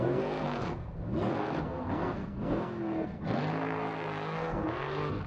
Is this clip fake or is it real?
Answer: fake